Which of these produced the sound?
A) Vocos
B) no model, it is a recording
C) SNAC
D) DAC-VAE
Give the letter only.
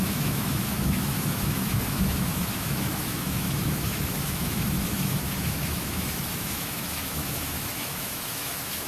D